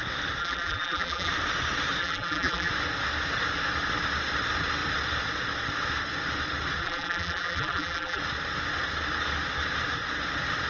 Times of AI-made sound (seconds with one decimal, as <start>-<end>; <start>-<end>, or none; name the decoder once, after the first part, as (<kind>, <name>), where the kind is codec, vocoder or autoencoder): 0.4-1.3 (vocoder, BigVGAN v2); 2.0-2.7; 6.8-8.2